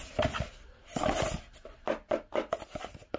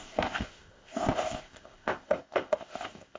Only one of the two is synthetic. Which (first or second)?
second